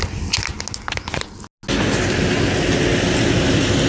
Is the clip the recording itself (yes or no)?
yes